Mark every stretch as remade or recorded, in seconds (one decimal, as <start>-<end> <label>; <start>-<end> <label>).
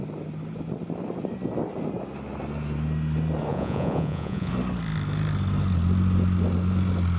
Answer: 0.0-3.5 recorded; 3.5-4.5 remade; 4.5-7.2 recorded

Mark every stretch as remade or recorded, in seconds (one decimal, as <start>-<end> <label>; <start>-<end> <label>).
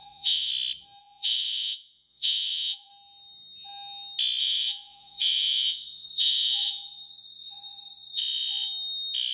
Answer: 0.0-0.5 remade; 0.5-1.0 recorded; 1.0-2.9 remade; 2.9-4.4 recorded; 4.4-8.2 remade; 8.2-9.3 recorded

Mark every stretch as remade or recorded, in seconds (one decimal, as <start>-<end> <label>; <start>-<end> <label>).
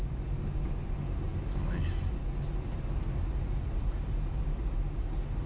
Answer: 0.0-5.5 recorded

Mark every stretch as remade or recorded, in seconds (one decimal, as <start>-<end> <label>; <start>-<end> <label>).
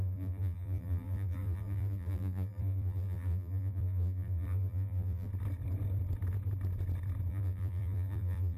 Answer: 0.0-5.3 remade; 5.3-7.3 recorded; 7.3-8.6 remade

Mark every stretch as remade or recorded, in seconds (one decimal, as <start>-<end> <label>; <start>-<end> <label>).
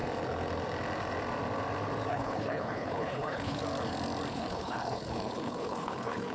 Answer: 0.0-2.1 recorded; 2.1-3.6 remade; 3.6-4.3 recorded; 4.3-6.3 remade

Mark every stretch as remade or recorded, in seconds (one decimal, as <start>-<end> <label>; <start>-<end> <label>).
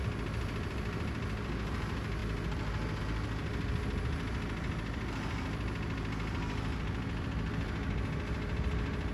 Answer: 0.0-9.1 recorded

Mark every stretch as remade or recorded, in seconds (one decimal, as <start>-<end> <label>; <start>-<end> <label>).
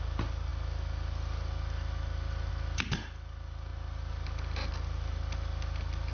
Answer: 0.0-6.1 recorded